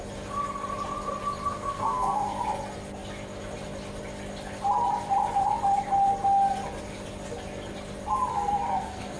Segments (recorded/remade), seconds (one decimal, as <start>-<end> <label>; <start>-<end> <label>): 0.0-1.5 recorded; 1.5-2.4 remade; 2.4-8.3 recorded; 8.3-9.2 remade

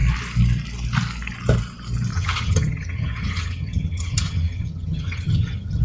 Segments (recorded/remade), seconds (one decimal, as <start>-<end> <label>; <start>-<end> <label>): 0.0-2.1 recorded; 2.1-5.8 remade

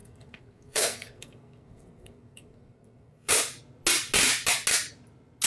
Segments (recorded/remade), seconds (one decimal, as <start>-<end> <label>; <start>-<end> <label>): 0.0-3.3 remade; 3.3-5.5 recorded

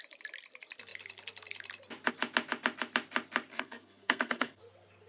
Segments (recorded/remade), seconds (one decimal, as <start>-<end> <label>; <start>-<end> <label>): 0.0-3.5 recorded; 3.5-4.6 remade; 4.6-5.1 recorded

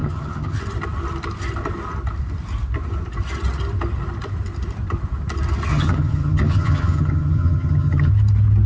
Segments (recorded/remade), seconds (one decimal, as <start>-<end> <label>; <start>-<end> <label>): 0.0-0.6 remade; 0.6-5.7 recorded; 5.7-8.1 remade; 8.1-8.7 recorded

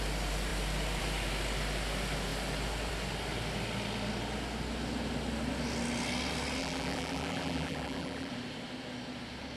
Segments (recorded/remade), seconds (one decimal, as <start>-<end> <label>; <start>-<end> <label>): 0.0-6.6 recorded; 6.6-8.3 remade; 8.3-9.6 recorded

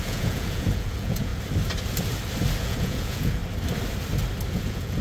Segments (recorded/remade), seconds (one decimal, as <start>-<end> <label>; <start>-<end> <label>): 0.0-1.3 remade; 1.3-2.6 recorded; 2.6-3.4 remade; 3.4-4.5 recorded; 4.5-5.0 remade

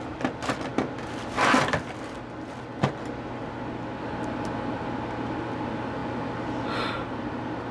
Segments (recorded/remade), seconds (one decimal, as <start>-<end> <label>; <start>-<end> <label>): 0.0-7.7 recorded